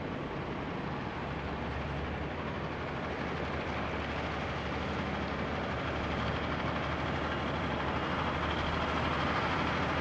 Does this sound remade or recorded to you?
recorded